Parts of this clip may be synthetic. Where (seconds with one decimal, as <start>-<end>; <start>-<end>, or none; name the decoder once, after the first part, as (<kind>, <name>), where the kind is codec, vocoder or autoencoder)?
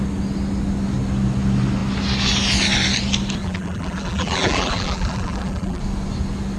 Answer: 3.4-5.8 (vocoder, BigVGAN v2)